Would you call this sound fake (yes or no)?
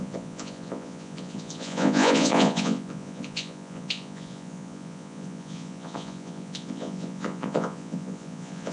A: yes